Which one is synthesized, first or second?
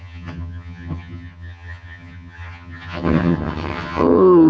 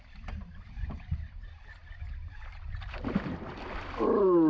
first